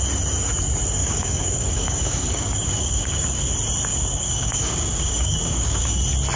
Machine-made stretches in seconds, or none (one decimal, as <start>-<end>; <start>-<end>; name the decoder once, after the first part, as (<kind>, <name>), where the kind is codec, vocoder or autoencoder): 1.0-3.4 (codec, DAC); 3.9-6.0